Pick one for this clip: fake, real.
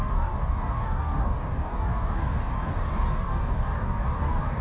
fake